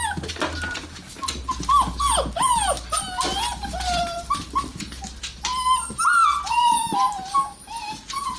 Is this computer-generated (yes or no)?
no